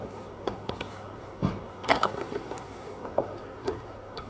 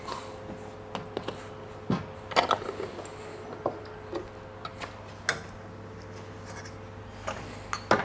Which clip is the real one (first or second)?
second